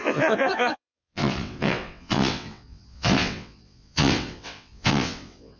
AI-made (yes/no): yes